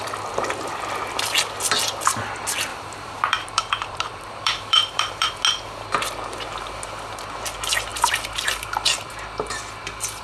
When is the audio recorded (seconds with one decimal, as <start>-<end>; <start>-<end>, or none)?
0.0-2.7; 5.3-7.9; 9.1-10.2